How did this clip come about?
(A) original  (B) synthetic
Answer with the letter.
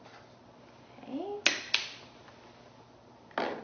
A